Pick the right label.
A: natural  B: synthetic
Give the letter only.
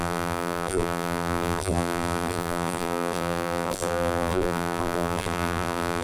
B